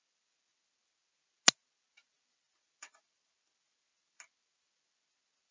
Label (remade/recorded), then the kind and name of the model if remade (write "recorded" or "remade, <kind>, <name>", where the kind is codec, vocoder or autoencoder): recorded